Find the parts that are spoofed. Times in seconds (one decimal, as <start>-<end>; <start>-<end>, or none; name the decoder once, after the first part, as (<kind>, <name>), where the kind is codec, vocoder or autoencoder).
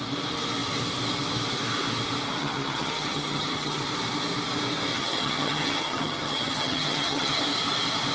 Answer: 2.4-3.8 (vocoder, HiFi-GAN); 4.9-7.4